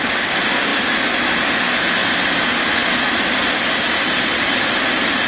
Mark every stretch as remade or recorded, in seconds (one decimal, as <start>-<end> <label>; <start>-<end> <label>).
0.0-0.7 recorded; 0.7-1.4 remade; 1.4-2.0 recorded; 2.0-3.5 remade; 3.5-5.3 recorded